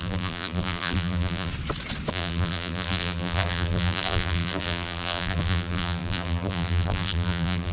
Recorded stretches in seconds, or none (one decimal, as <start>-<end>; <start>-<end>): 1.5-2.1